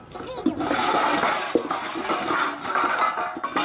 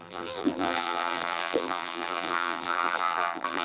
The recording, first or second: first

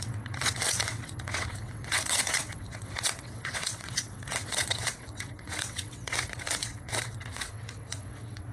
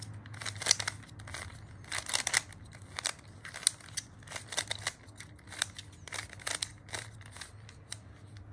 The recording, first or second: second